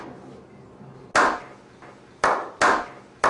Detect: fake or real real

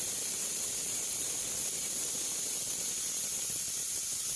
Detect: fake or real real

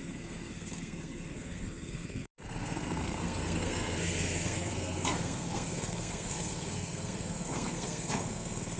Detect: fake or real fake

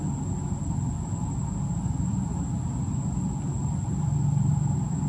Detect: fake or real real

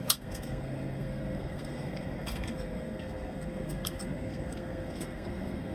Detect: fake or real fake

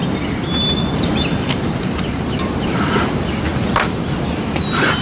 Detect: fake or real real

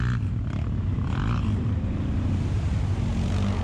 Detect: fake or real real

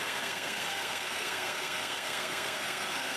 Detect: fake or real fake